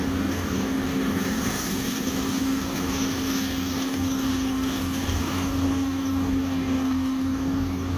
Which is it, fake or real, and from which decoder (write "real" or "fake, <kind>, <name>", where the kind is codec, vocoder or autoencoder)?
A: fake, codec, DAC